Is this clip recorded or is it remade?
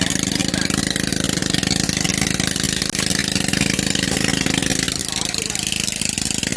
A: recorded